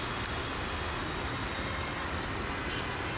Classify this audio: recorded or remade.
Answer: recorded